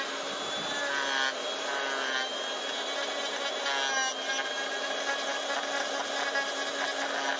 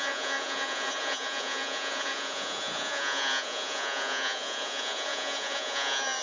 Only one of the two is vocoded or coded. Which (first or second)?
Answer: second